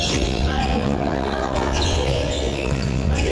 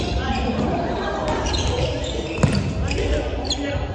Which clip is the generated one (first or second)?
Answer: first